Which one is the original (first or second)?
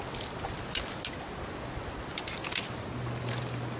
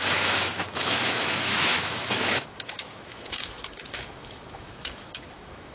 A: first